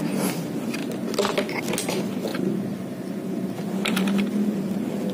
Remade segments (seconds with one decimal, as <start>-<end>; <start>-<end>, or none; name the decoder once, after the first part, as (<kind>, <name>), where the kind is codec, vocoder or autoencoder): none